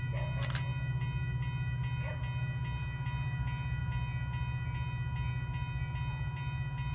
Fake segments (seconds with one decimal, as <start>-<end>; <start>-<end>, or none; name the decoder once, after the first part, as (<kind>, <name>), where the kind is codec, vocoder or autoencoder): none